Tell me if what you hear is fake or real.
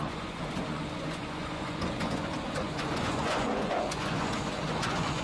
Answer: fake